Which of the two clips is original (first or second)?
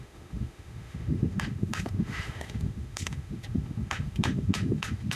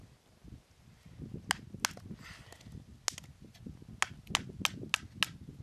second